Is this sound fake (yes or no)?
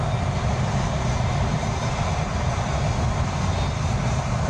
no